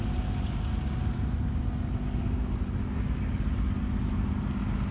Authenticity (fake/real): real